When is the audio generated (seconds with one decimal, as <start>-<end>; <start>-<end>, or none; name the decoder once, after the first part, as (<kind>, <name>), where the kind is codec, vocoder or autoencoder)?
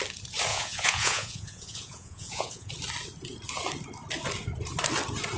0.5-2.7 (vocoder, Vocos)